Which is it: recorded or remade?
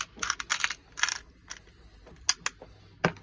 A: recorded